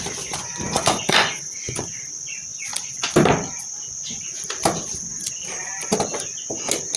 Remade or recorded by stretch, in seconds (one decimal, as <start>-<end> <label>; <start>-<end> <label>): 0.0-0.4 recorded; 0.4-2.0 remade; 2.0-7.0 recorded